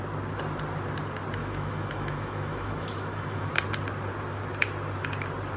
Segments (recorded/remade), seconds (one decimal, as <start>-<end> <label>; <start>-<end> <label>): 0.0-1.4 recorded; 1.4-3.5 remade; 3.5-5.6 recorded

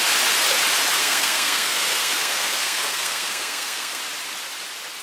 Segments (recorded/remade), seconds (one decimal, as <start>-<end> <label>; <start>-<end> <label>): 0.0-1.0 recorded; 1.0-4.0 remade; 4.0-5.0 recorded

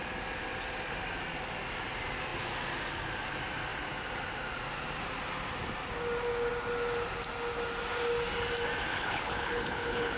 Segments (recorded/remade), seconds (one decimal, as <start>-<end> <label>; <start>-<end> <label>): 0.0-8.9 recorded; 8.9-10.2 remade

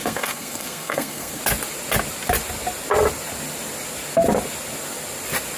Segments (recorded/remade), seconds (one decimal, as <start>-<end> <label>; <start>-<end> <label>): 0.0-1.4 remade; 1.4-5.6 recorded

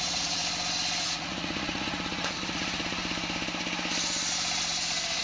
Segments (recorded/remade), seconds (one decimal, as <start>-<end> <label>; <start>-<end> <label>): 0.0-0.4 remade; 0.4-1.0 recorded; 1.0-3.0 remade; 3.0-5.2 recorded

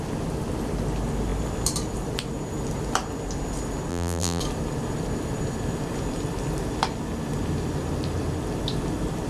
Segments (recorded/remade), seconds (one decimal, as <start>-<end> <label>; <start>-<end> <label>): 0.0-3.9 recorded; 3.9-4.4 remade; 4.4-9.3 recorded

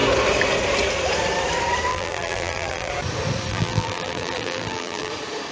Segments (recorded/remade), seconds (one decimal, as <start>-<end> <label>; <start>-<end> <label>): 0.0-1.9 recorded; 1.9-2.9 remade; 2.9-3.5 recorded; 3.5-5.1 remade; 5.1-5.5 recorded